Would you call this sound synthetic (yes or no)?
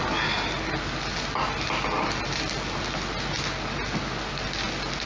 no